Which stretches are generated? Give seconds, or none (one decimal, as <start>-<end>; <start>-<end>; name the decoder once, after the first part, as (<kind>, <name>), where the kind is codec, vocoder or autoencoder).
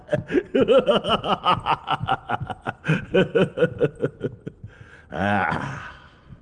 none